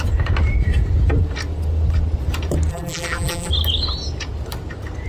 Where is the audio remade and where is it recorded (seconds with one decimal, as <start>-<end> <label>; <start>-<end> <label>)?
0.0-2.7 recorded; 2.7-3.5 remade; 3.5-5.1 recorded